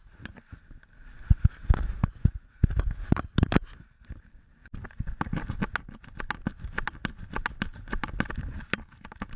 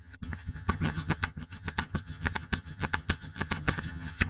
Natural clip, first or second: first